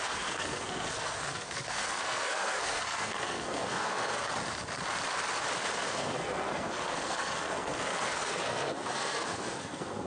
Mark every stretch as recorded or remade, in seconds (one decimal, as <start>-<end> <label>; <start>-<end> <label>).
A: 0.0-4.3 remade; 4.3-5.9 recorded; 5.9-10.1 remade